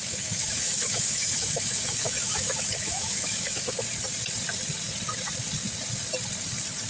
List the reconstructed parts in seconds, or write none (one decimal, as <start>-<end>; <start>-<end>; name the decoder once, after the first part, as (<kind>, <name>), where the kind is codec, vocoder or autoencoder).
0.0-3.7 (autoencoder, DAC-VAE)